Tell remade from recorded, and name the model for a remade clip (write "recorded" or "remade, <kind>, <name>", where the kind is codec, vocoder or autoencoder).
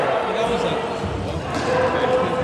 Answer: recorded